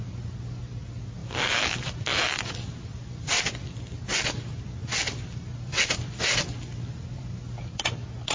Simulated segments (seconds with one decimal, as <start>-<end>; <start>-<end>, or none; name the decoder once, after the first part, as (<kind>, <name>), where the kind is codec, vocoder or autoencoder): 1.2-3.7 (vocoder, BigVGAN v2); 5.7-7.6